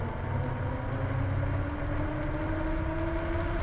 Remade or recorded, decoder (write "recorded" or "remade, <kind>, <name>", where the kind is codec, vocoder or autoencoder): recorded